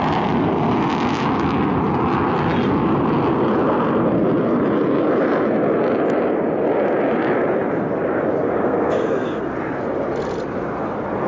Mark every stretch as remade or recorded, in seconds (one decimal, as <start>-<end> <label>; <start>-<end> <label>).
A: 0.0-8.6 recorded; 8.6-9.4 remade; 9.4-11.3 recorded